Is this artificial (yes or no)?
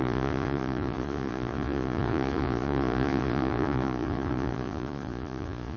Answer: yes